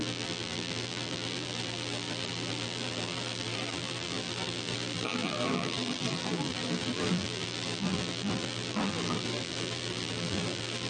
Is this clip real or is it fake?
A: fake